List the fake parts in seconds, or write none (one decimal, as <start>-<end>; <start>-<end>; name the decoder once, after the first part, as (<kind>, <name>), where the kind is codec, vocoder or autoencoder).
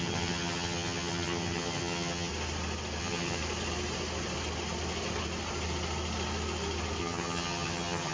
0.0-2.3 (vocoder, HiFi-GAN); 3.0-3.4; 7.0-8.1